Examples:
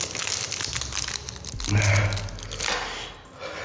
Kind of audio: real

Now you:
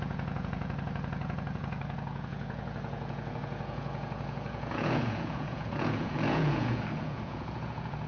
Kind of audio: fake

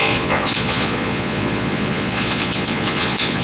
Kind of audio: fake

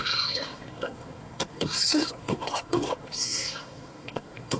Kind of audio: fake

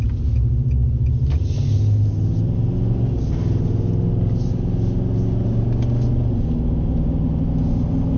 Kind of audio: real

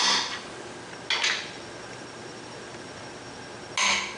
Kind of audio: real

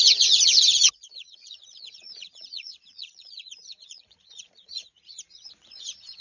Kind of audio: fake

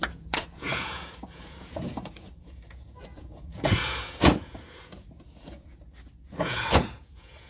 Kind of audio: fake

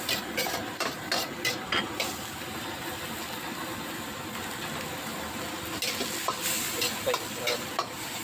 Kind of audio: real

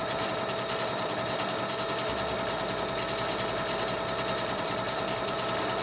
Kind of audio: real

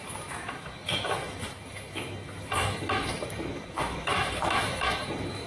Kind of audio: fake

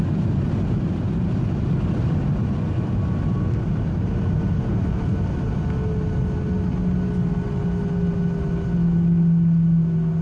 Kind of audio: real